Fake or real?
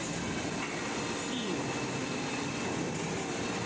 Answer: real